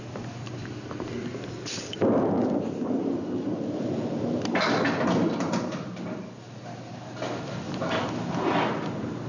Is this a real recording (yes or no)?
yes